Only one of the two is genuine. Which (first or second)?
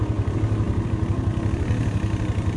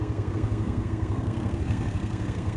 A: first